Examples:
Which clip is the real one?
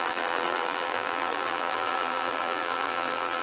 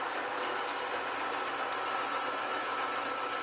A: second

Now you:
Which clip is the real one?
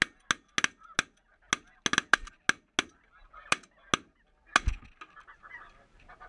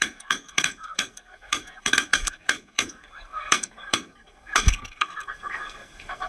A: first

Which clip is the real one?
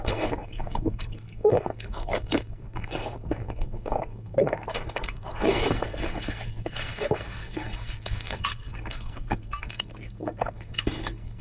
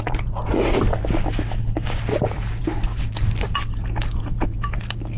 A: second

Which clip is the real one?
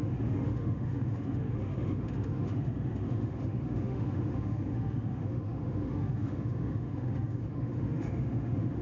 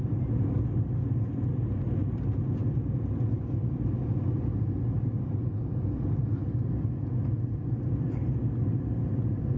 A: second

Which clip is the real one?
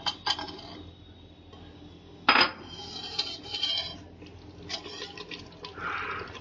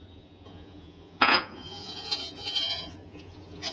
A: first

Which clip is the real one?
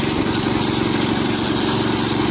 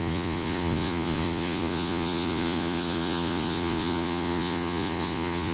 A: first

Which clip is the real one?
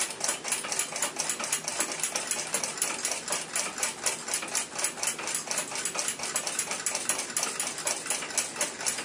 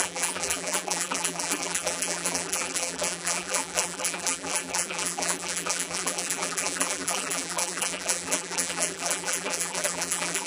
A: first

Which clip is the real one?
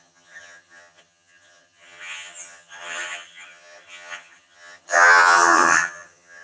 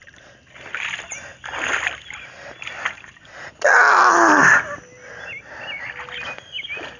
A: second